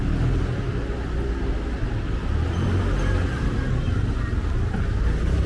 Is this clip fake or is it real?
real